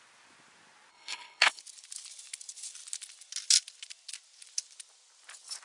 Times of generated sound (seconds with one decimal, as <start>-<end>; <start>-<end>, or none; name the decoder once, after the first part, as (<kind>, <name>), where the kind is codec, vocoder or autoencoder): 0.9-1.6 (codec, HILCodec)